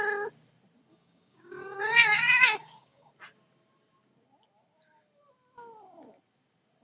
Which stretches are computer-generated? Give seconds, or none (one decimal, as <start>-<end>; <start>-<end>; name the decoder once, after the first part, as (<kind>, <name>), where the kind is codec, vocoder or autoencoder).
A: 0.9-3.1 (codec, DAC)